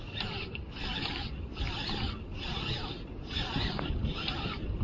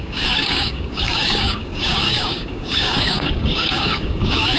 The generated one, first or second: second